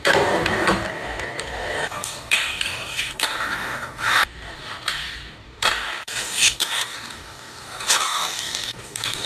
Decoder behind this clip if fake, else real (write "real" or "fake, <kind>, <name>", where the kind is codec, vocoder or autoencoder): fake, codec, DAC